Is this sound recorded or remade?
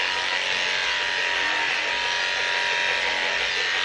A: recorded